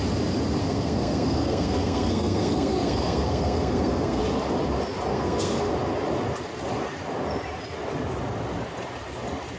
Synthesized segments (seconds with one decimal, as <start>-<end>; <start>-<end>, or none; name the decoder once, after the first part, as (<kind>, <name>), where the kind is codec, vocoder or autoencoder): 0.6-4.2 (codec, SNAC); 5.1-5.7